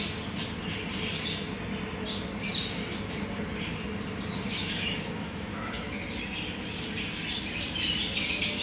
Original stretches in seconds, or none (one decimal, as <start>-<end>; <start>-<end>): 0.0-4.6; 5.9-8.6